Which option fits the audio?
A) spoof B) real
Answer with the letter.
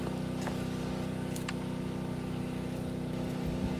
B